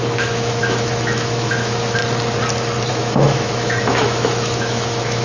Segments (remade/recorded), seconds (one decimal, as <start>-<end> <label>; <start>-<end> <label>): 0.0-2.0 remade; 2.0-2.9 recorded; 2.9-5.2 remade

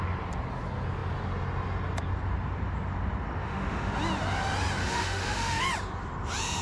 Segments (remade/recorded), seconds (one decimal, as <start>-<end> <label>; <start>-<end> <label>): 0.0-3.4 recorded; 3.4-3.9 remade; 3.9-4.8 recorded; 4.8-5.6 remade; 5.6-6.6 recorded

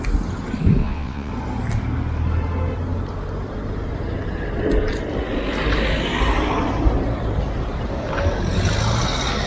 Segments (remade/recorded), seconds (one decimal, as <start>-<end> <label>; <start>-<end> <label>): 0.0-0.8 recorded; 0.8-1.3 remade; 1.3-9.5 recorded